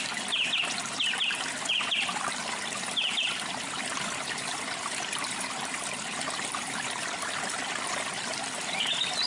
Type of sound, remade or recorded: recorded